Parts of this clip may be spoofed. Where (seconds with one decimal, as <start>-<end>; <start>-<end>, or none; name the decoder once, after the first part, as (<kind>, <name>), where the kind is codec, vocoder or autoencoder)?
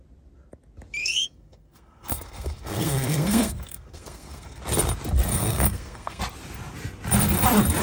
1.0-4.6 (codec, SNAC); 5.3-6.2